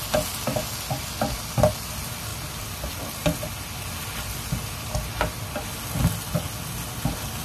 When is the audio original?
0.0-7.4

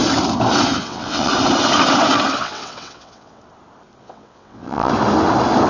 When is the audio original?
0.0-0.8; 1.3-2.4; 3.4-4.0; 4.9-5.7

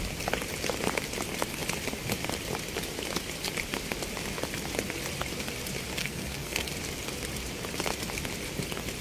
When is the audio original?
0.0-6.0; 6.7-9.0

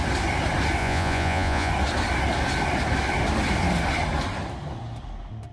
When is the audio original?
0.0-0.8; 1.7-5.5

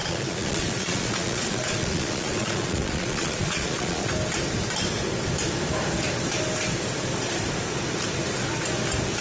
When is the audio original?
4.1-9.2

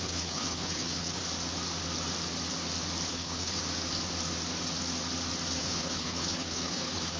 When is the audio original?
1.2-3.1; 3.6-5.6